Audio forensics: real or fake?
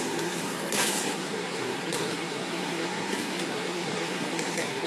fake